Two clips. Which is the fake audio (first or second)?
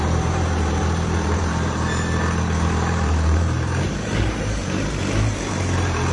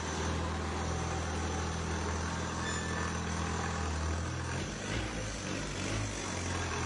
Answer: first